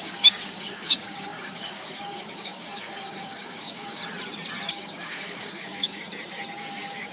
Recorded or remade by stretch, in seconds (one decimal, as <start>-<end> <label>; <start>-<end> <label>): 0.0-4.0 remade; 4.0-4.7 recorded; 4.7-6.0 remade; 6.0-6.6 recorded; 6.6-7.1 remade

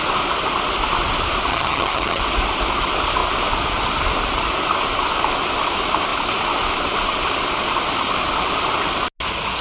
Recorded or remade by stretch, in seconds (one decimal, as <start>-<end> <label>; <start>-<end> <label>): 0.0-1.5 recorded; 1.5-2.2 remade; 2.2-9.6 recorded

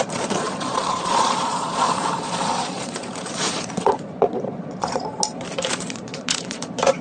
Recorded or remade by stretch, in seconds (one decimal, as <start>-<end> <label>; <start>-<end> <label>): 0.0-5.1 remade; 5.1-5.7 recorded; 5.7-7.0 remade

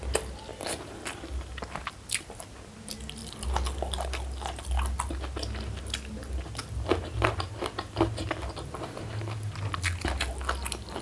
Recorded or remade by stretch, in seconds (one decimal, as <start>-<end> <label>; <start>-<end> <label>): 0.0-0.5 recorded; 0.5-2.7 remade; 2.7-3.2 recorded; 3.2-5.1 remade; 5.1-6.6 recorded; 6.6-10.3 remade; 10.3-11.0 recorded